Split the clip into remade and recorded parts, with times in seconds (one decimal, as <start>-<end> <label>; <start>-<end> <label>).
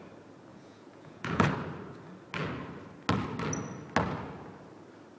0.0-0.5 recorded; 0.5-1.5 remade; 1.5-5.2 recorded